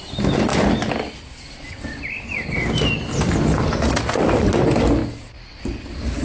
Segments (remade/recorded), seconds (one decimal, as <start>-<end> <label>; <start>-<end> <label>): 0.0-6.2 recorded